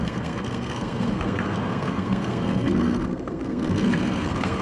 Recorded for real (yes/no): no